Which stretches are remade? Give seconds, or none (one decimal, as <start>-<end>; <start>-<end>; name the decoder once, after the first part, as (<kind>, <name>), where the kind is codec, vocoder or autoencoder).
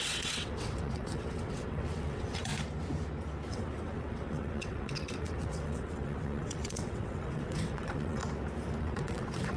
0.0-2.5 (vocoder, WaveNeXt); 3.5-8.2; 8.8-9.6